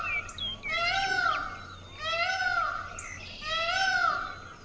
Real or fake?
real